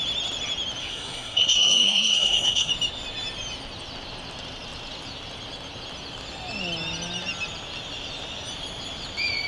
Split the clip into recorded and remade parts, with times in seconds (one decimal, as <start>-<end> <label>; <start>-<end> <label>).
0.0-0.8 recorded; 0.8-2.7 remade; 2.7-9.5 recorded